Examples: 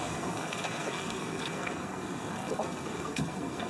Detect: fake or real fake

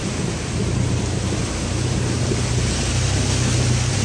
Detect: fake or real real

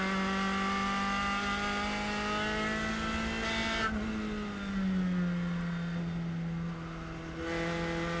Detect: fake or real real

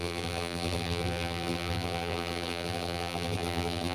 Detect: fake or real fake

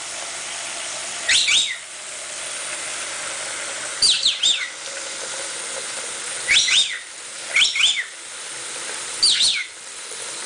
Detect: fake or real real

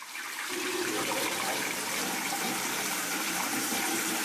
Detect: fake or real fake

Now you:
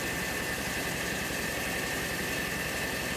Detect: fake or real real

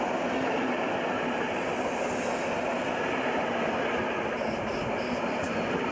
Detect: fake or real real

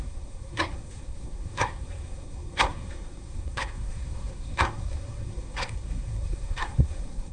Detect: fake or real fake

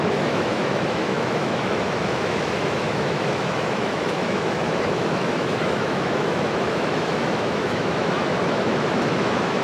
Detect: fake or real fake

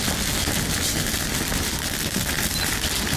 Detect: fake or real real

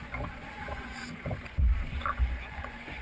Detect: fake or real fake